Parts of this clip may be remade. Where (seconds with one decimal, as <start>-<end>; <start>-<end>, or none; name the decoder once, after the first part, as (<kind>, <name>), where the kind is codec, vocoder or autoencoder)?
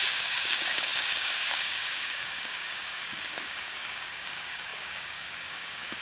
0.0-6.0 (codec, DAC)